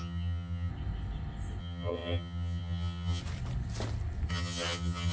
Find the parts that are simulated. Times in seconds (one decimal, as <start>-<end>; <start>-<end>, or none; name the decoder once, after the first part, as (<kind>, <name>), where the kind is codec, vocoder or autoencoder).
0.0-0.7 (vocoder, HiFi-GAN); 1.6-3.2; 4.3-5.1